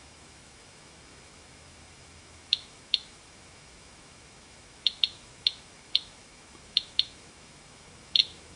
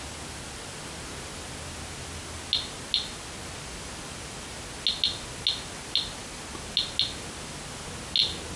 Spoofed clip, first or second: first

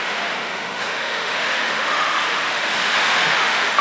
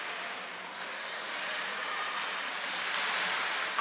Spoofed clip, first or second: first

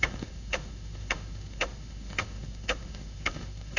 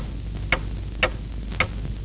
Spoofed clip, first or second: first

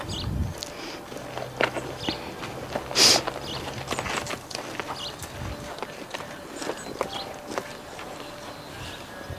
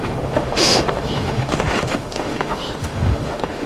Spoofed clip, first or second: second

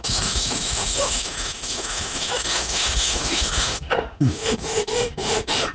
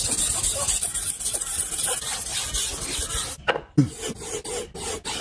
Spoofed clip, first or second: first